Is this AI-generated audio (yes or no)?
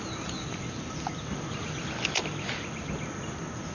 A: no